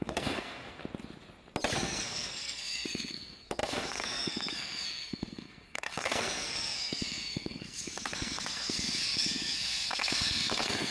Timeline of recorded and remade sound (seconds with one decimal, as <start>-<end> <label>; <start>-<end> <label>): 0.0-0.8 remade; 0.8-1.7 recorded; 1.7-10.9 remade